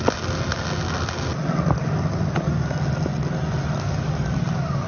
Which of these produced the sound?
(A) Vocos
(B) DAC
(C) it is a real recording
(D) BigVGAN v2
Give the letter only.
C